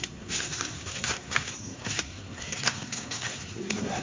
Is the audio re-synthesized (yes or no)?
yes